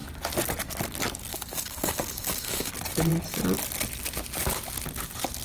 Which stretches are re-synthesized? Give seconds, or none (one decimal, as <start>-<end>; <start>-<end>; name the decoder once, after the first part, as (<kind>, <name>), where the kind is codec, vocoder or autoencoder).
1.3-2.7 (codec, DAC)